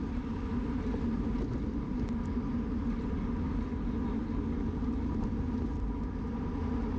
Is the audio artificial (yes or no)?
no